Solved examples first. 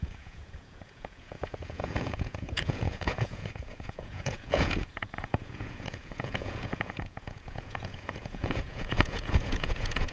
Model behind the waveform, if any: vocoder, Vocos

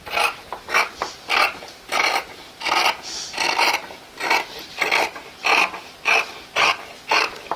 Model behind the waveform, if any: none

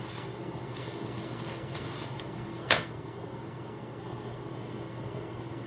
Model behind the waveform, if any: codec, SNAC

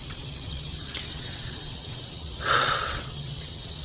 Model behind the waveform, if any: vocoder, WaveNeXt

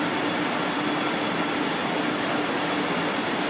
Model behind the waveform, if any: none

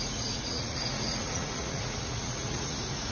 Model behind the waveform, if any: vocoder, Vocos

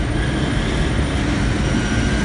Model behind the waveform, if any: none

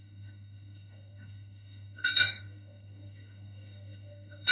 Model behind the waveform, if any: codec, DAC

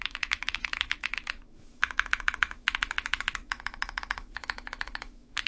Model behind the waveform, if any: autoencoder, DAC-VAE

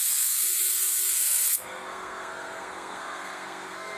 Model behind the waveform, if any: codec, SNAC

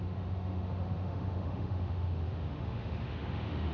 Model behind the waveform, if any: autoencoder, DAC-VAE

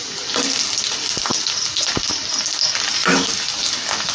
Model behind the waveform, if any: none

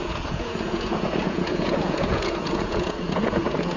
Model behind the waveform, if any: vocoder, Vocos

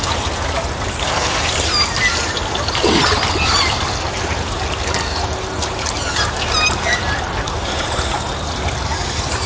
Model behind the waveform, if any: none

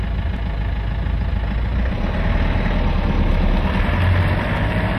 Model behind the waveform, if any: none